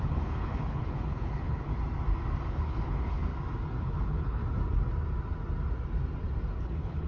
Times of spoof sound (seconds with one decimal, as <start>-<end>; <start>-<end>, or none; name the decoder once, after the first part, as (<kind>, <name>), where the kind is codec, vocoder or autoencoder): 0.0-1.7 (codec, HILCodec); 2.5-3.3; 3.8-4.4; 6.6-7.1